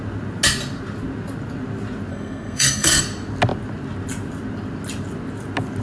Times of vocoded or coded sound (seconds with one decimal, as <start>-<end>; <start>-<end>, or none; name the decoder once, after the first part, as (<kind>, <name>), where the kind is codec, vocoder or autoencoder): 2.1-3.0 (codec, SNAC)